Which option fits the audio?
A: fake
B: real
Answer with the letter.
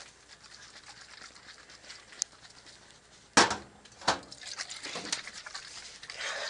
B